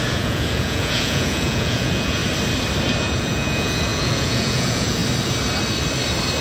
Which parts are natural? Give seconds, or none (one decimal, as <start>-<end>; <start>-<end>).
2.2-3.0; 5.0-6.4